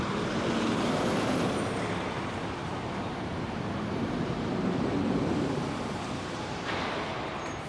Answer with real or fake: fake